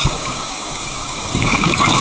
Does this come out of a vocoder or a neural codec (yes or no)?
yes